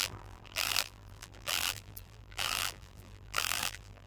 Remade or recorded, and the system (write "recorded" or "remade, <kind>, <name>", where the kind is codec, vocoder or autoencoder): remade, vocoder, BigVGAN v2